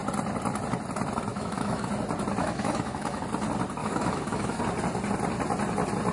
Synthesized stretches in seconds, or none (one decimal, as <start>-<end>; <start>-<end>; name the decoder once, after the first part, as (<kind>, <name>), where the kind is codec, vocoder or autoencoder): 1.3-1.9 (autoencoder, DAC-VAE); 2.4-3.2; 3.8-4.6